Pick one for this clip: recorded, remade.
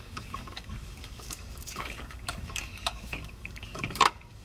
remade